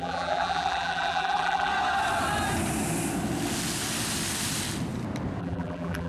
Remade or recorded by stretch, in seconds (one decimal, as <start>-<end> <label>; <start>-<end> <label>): 0.0-1.7 remade; 1.7-5.4 recorded; 5.4-6.1 remade